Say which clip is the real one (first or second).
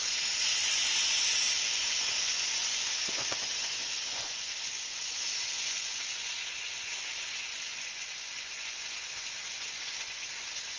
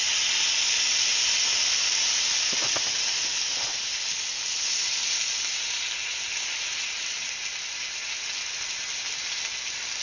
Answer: second